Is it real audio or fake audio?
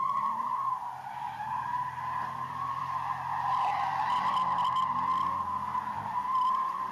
fake